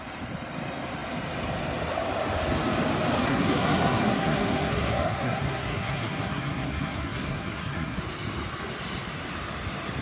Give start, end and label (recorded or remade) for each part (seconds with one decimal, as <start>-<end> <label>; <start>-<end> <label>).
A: 0.0-3.2 recorded; 3.2-8.0 remade; 8.0-10.0 recorded